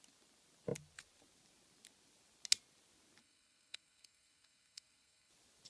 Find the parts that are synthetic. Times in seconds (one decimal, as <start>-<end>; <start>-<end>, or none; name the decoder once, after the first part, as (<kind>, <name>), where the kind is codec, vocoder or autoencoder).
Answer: 3.2-5.3 (codec, SNAC)